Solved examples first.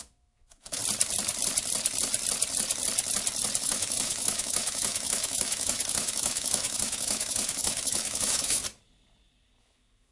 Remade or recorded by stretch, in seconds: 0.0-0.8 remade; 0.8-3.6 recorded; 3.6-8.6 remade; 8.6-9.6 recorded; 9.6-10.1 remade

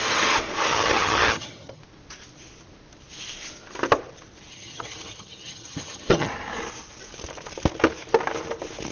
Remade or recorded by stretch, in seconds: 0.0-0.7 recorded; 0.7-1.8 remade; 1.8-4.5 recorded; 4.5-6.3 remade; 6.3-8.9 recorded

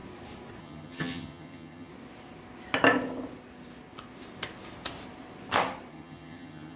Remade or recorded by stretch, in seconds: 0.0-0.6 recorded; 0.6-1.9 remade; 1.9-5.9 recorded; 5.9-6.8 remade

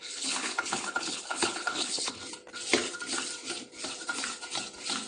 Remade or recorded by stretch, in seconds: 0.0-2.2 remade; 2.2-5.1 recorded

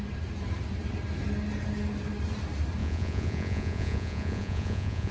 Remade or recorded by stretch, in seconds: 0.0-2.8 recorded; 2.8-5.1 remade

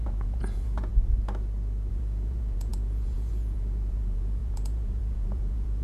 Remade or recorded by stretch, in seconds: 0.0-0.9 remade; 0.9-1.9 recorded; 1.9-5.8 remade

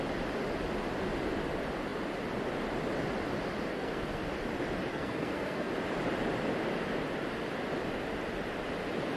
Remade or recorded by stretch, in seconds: 0.0-3.7 recorded; 3.7-4.2 remade; 4.2-4.9 recorded; 4.9-5.7 remade; 5.7-9.2 recorded